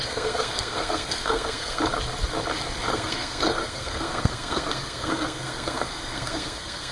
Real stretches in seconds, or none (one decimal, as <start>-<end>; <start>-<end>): 1.8-2.9